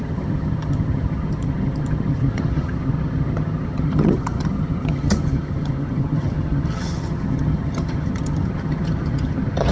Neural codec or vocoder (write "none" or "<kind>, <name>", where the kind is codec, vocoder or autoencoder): vocoder, HiFi-GAN